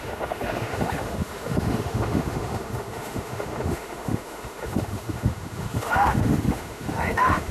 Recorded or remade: remade